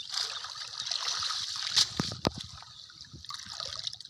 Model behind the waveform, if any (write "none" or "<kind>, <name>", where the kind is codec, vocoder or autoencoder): none